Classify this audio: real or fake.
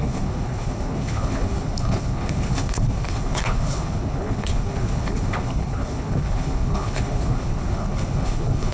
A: fake